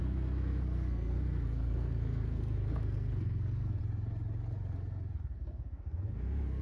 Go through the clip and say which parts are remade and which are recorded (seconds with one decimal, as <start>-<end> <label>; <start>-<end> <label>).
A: 0.0-3.8 remade; 3.8-5.2 recorded; 5.2-6.6 remade